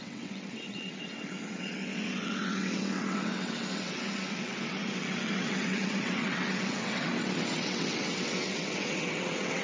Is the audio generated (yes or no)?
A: yes